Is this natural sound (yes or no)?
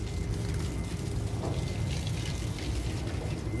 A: yes